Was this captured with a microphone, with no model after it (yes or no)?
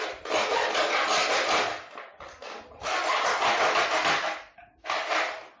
yes